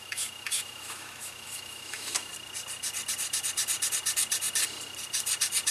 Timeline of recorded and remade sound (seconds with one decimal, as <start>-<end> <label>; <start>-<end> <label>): 0.0-2.3 remade; 2.3-5.7 recorded